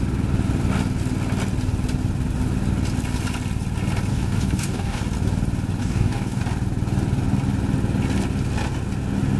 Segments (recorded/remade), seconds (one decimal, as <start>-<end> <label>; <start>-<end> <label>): 0.0-4.1 recorded; 4.1-5.0 remade; 5.0-5.8 recorded; 5.8-6.4 remade; 6.4-9.4 recorded